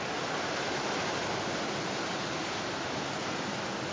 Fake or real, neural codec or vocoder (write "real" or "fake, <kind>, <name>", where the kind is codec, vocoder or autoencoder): real